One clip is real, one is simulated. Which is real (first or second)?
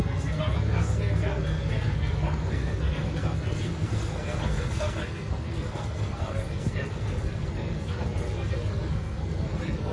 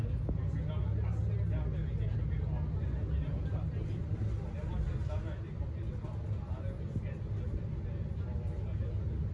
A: second